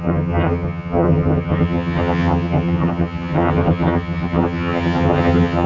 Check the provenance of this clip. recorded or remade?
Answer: remade